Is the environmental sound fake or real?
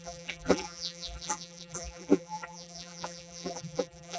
fake